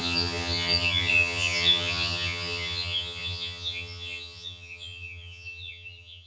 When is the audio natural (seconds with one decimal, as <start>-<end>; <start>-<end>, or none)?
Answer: none

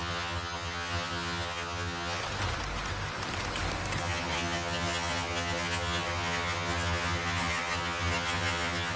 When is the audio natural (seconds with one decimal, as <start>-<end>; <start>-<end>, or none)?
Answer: 2.2-4.0

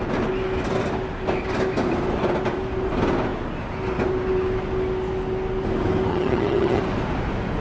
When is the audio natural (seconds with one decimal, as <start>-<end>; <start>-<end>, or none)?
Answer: 0.0-6.1; 6.8-7.6

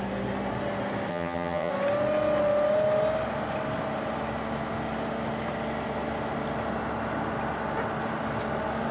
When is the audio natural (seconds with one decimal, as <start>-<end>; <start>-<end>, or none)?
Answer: 0.0-1.1; 1.7-8.9